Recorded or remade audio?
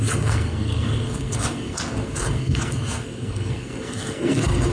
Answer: remade